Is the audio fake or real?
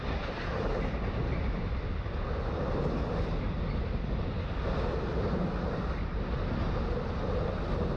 real